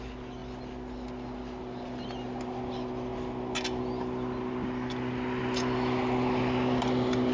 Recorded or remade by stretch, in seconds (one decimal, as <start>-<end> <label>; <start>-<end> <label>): 0.0-7.3 recorded